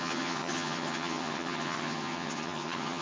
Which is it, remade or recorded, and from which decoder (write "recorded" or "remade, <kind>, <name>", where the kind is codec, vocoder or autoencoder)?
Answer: remade, vocoder, HiFi-GAN